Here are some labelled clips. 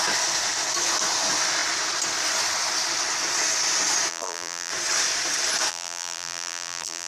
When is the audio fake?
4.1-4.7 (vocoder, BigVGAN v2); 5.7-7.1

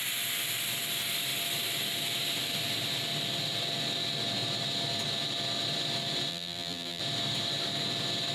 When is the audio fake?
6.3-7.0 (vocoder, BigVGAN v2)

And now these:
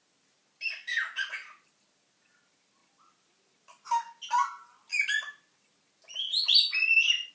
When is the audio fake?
none

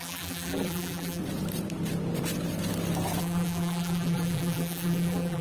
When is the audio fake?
0.0-1.2 (vocoder, BigVGAN v2); 3.2-5.4

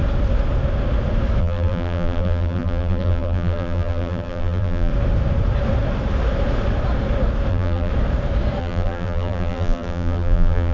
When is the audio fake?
1.4-4.9 (vocoder, BigVGAN v2); 7.5-7.9; 8.6-10.7

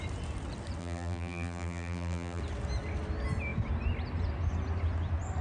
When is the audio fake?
0.8-2.4 (vocoder, BigVGAN v2)

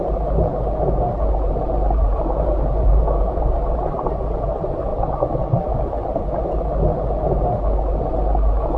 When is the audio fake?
0.0-0.5 (vocoder, BigVGAN v2); 1.1-4.9

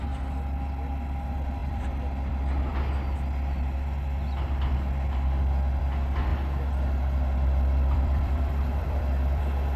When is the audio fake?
1.6-2.3 (vocoder, BigVGAN v2); 6.3-9.4